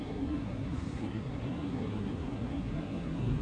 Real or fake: fake